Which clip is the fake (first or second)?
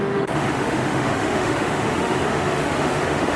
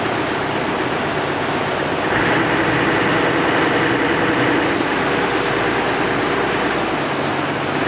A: first